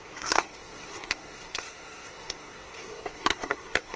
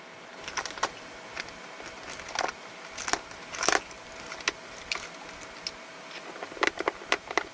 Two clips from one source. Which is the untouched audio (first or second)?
second